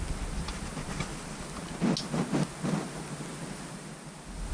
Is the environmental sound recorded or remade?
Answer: recorded